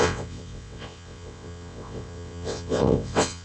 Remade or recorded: remade